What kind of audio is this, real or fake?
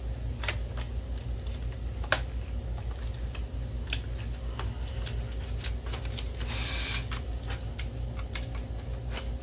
real